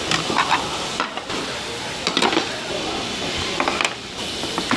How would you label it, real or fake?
real